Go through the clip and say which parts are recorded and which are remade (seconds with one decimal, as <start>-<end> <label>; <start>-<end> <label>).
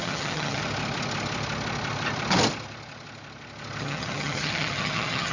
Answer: 0.0-0.6 remade; 0.6-3.8 recorded; 3.8-5.3 remade